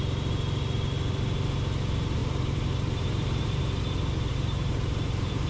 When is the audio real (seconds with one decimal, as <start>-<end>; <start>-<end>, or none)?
0.0-2.2; 3.6-4.3